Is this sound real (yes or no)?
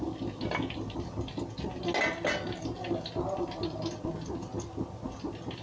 yes